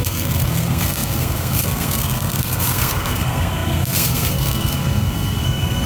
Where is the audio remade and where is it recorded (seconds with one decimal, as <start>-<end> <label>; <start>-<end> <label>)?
0.0-5.9 remade